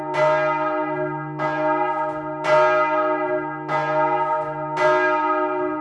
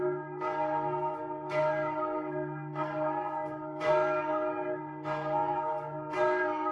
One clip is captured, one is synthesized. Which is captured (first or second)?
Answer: first